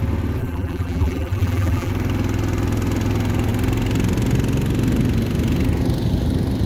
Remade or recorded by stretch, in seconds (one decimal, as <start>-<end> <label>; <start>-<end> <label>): 0.0-0.4 recorded; 0.4-1.9 remade; 1.9-6.7 recorded